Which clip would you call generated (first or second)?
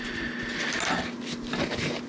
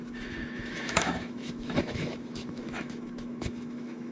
second